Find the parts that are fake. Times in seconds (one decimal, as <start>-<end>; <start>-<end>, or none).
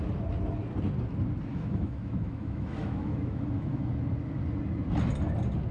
1.5-3.9